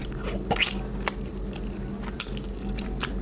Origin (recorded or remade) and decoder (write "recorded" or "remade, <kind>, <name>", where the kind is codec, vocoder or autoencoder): recorded